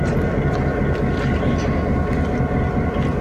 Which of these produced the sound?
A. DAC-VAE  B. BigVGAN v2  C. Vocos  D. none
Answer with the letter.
D